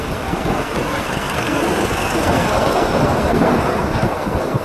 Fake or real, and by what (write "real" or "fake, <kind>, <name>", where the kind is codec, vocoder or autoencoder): fake, codec, SNAC